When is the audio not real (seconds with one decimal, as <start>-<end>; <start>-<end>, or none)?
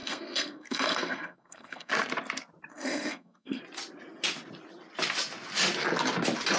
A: 0.0-1.9; 2.7-3.6